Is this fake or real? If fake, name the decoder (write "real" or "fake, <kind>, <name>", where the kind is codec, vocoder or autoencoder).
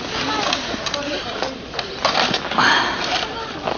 real